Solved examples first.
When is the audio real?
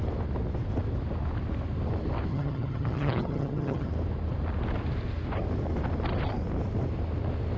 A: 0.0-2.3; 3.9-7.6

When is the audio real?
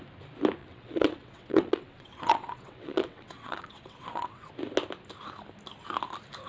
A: 0.0-0.6; 4.5-6.5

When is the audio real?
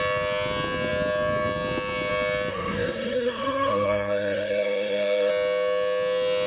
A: 0.0-2.5; 5.3-6.5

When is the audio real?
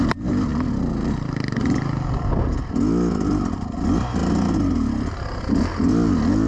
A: 0.0-6.5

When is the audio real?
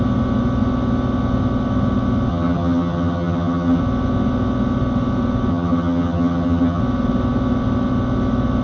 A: 0.0-2.3; 3.8-5.5; 6.8-8.6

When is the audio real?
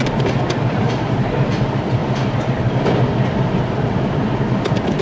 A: 0.0-5.0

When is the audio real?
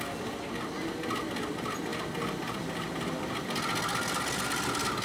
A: 0.0-5.0